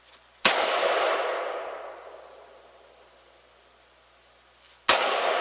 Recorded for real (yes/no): yes